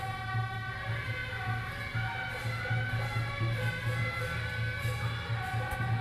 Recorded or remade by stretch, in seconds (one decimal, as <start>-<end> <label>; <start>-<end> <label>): 0.0-6.0 recorded